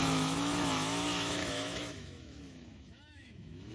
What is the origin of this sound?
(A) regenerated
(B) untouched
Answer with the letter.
A